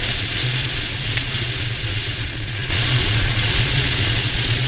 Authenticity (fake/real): fake